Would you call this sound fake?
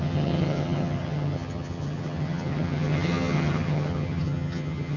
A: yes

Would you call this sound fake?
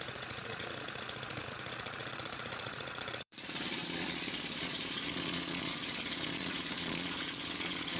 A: yes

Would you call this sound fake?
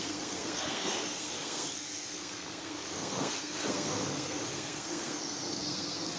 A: yes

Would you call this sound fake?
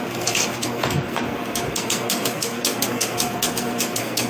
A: yes